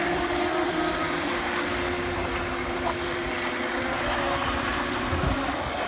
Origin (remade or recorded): recorded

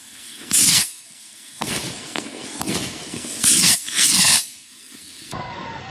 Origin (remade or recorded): remade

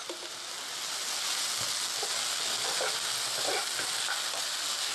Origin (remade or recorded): recorded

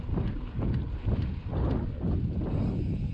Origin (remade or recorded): recorded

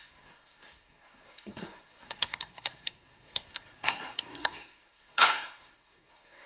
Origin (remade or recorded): remade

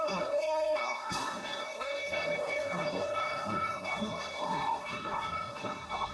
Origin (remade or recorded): remade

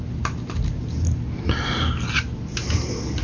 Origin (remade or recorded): recorded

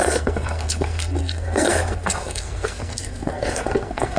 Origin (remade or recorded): remade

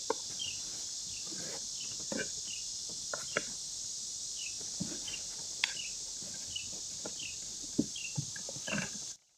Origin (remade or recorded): recorded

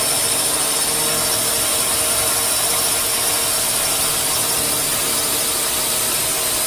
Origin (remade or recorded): recorded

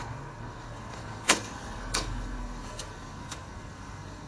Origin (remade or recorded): remade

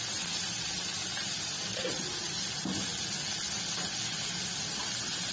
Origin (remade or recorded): recorded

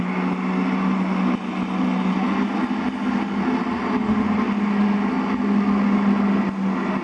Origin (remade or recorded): recorded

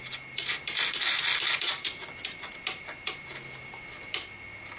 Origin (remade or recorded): recorded